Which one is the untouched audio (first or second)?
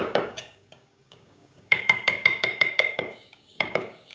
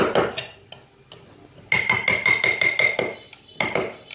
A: second